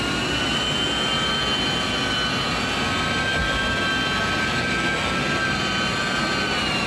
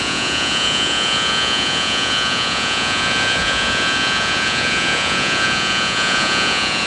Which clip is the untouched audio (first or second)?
first